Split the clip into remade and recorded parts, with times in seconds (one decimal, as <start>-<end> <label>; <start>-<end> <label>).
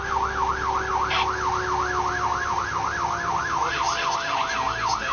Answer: 0.0-5.1 recorded